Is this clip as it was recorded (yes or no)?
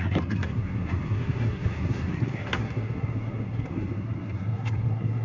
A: no